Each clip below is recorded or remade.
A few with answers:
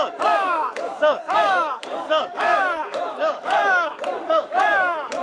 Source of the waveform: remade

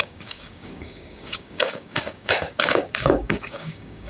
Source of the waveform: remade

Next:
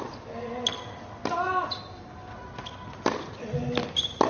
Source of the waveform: recorded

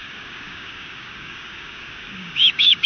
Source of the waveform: remade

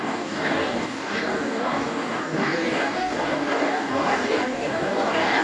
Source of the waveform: remade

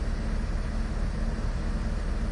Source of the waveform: recorded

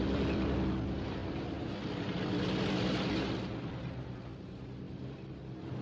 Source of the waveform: recorded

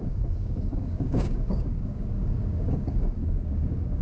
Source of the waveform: remade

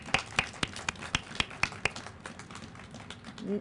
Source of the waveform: recorded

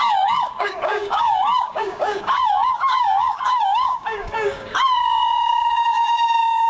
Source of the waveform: remade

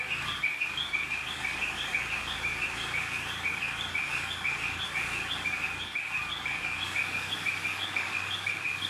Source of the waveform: remade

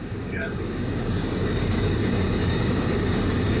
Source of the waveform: remade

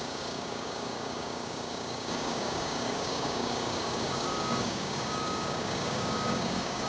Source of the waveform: remade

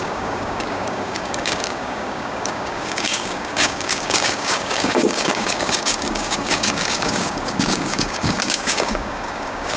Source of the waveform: remade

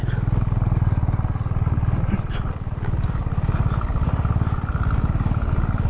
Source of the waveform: recorded